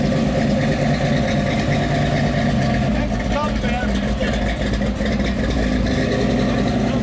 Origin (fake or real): real